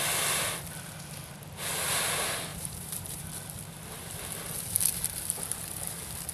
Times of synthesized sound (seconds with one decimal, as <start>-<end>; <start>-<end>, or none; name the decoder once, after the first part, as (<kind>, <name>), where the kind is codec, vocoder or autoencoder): 2.5-3.3 (vocoder, BigVGAN v2)

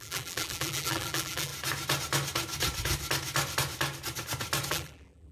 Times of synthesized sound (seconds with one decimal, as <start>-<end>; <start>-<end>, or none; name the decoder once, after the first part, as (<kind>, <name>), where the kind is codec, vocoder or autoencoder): 0.0-1.5 (vocoder, BigVGAN v2); 4.7-5.3

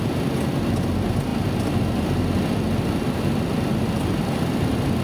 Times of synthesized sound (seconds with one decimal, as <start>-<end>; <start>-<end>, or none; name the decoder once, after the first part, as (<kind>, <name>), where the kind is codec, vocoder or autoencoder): none